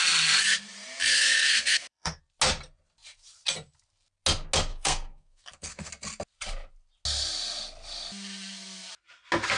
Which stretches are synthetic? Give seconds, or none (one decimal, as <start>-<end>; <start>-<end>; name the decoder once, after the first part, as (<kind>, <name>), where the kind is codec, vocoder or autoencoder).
1.1-2.2 (codec, SNAC); 4.7-5.9